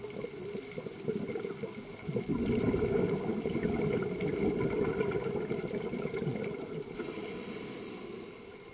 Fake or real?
real